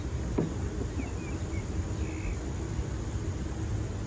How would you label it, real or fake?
real